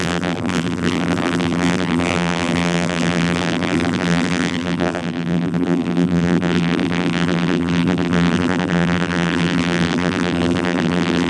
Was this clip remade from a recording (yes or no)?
yes